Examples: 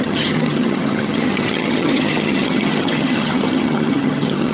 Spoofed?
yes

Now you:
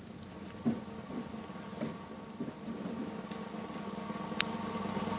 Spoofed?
no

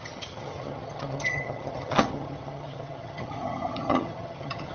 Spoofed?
yes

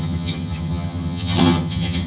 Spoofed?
yes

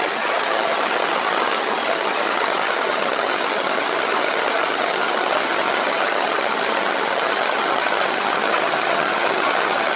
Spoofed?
yes